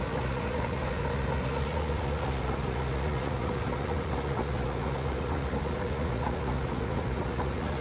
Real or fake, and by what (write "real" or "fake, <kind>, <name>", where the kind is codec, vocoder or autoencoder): fake, vocoder, Vocos